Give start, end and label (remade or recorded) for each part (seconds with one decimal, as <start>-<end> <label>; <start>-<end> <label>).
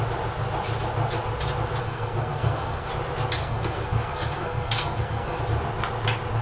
0.0-1.8 recorded; 1.8-2.9 remade; 2.9-3.4 recorded; 3.4-5.4 remade; 5.4-6.4 recorded